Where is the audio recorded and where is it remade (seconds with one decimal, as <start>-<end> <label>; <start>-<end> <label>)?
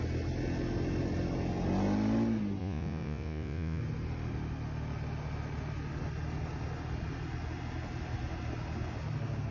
0.0-2.6 recorded; 2.6-3.8 remade; 3.8-9.5 recorded